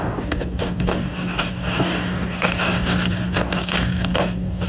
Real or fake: fake